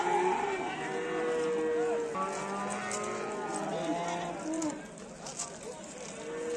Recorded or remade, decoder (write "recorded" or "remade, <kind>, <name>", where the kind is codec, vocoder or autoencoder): recorded